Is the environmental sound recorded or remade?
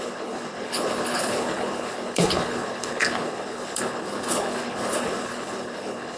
remade